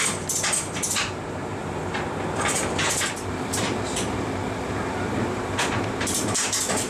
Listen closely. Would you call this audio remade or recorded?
remade